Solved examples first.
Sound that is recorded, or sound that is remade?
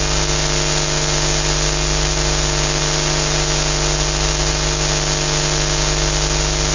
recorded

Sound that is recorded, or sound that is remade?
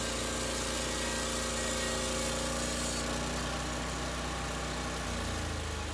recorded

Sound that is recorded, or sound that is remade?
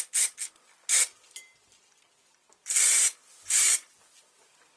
recorded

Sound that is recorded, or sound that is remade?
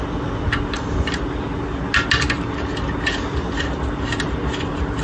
recorded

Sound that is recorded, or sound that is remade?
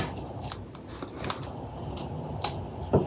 recorded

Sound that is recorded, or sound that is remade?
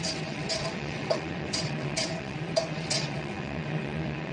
remade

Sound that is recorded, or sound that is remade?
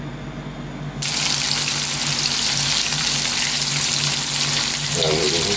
recorded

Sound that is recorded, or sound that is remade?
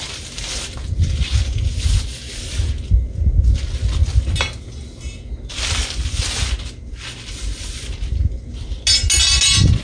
recorded